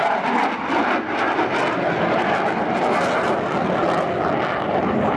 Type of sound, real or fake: real